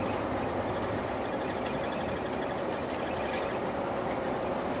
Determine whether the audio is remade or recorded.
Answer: recorded